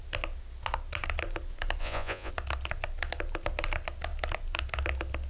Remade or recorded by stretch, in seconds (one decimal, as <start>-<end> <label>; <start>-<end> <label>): 0.0-1.8 recorded; 1.8-2.3 remade; 2.3-5.3 recorded